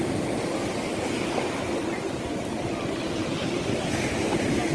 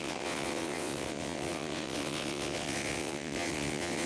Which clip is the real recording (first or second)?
first